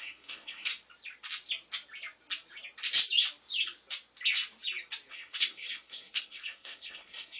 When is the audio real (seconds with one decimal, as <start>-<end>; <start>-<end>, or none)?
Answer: 0.7-5.1